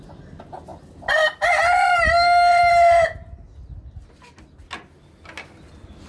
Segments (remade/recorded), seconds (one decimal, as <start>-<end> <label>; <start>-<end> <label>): 0.0-6.1 recorded